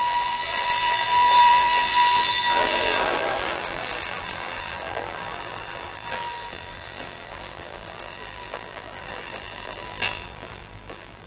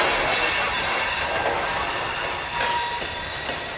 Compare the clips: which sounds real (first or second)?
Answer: second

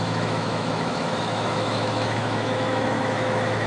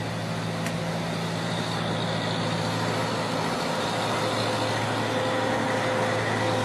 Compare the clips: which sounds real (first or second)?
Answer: second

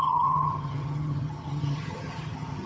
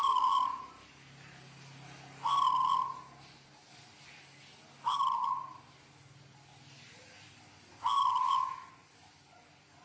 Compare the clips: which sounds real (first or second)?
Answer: second